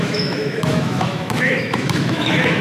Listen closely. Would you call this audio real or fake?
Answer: fake